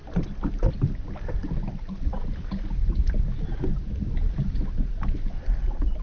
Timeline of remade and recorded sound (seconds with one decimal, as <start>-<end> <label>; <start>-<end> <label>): 0.0-6.0 recorded